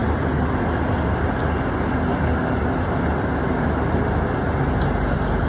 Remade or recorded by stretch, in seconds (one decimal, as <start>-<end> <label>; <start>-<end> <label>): 0.0-5.5 recorded